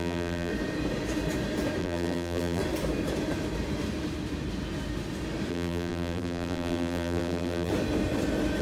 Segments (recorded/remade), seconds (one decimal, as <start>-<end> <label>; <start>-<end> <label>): 0.0-0.5 remade; 0.5-1.8 recorded; 1.8-2.6 remade; 2.6-5.5 recorded; 5.5-7.7 remade; 7.7-8.6 recorded